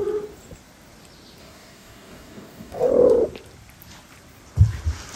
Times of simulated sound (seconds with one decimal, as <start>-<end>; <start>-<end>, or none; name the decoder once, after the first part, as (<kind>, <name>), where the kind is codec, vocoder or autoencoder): 1.4-2.9 (codec, DAC)